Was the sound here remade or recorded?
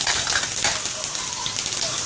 recorded